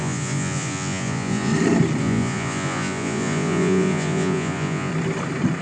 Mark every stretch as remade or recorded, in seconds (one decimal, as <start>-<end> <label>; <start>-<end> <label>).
0.0-1.5 remade; 1.5-2.0 recorded; 2.0-4.9 remade; 4.9-5.6 recorded